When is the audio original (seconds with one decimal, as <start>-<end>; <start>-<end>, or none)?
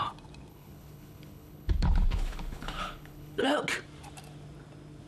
0.0-0.5; 3.6-5.1